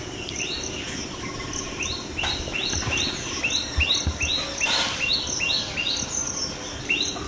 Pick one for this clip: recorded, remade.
recorded